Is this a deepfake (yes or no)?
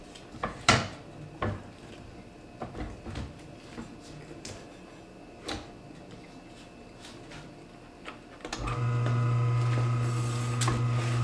no